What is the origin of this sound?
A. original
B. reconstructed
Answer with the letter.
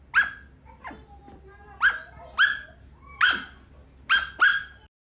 A